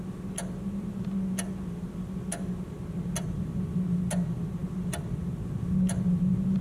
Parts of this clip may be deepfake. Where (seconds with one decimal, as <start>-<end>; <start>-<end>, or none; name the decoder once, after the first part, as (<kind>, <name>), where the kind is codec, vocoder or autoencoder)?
none